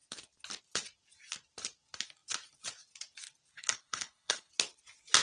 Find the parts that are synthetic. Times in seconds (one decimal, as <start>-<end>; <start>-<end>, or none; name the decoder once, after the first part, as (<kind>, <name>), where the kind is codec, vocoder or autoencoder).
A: 3.5-4.5 (codec, HILCodec)